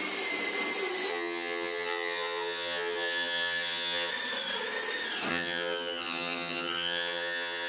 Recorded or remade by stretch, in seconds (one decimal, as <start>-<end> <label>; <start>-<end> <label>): 0.0-1.1 recorded; 1.1-4.1 remade; 4.1-5.3 recorded; 5.3-7.7 remade